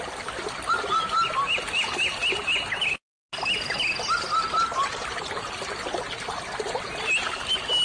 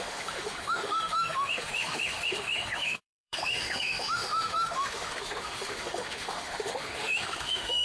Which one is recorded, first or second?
first